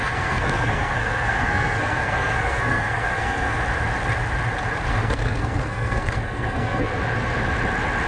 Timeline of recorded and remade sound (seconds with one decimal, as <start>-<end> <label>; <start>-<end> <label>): 0.0-3.6 remade; 3.6-4.9 recorded; 4.9-6.9 remade; 6.9-8.1 recorded